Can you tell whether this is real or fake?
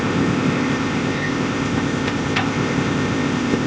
fake